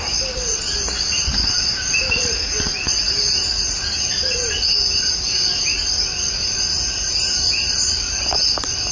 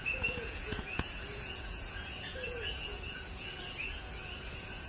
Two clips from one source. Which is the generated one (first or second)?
second